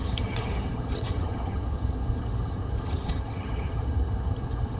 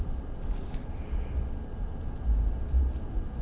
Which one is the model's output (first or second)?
first